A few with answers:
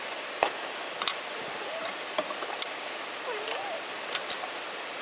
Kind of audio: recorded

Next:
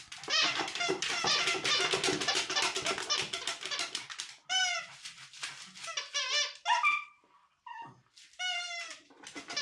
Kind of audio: recorded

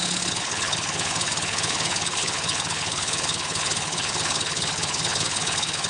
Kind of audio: remade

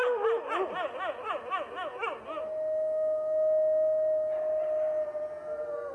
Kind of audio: recorded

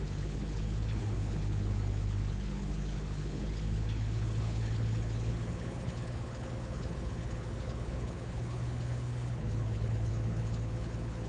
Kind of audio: remade